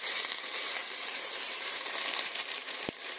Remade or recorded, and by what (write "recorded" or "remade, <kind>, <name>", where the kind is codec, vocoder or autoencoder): remade, vocoder, BigVGAN v2